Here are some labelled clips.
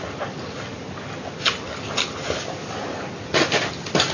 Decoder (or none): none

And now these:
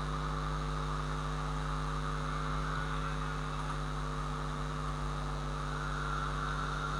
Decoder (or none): none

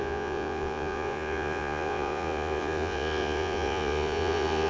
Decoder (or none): vocoder, Vocos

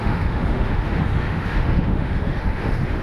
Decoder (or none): autoencoder, DAC-VAE